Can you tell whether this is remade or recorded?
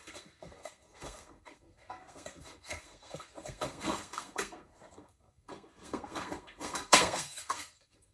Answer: remade